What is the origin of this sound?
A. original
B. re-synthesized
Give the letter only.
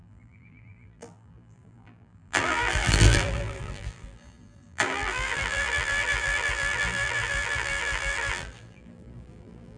B